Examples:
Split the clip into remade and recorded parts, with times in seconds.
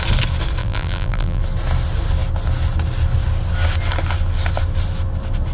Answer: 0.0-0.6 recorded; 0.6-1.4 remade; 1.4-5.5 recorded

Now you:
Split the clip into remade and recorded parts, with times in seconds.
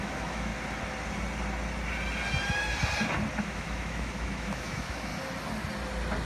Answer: 0.0-0.5 remade; 0.5-3.4 recorded; 3.4-5.1 remade; 5.1-6.3 recorded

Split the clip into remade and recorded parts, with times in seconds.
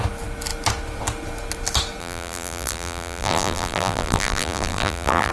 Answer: 0.0-2.0 recorded; 2.0-5.3 remade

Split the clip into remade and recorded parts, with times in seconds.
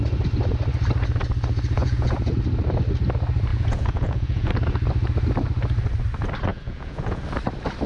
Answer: 0.0-1.8 recorded; 1.8-2.3 remade; 2.3-3.5 recorded; 3.5-4.5 remade; 4.5-6.5 recorded; 6.5-7.2 remade; 7.2-7.9 recorded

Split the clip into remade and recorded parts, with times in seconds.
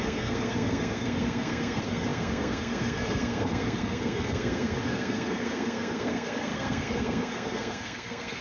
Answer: 0.0-8.4 remade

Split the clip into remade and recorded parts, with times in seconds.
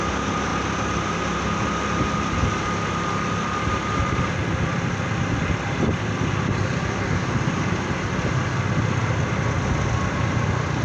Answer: 0.0-10.8 recorded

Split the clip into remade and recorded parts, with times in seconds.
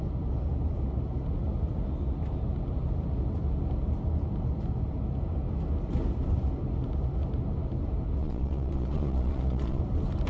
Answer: 0.0-8.2 recorded; 8.2-9.8 remade; 9.8-10.3 recorded